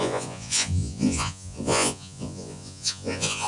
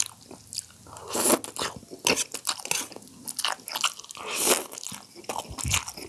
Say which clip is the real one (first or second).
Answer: second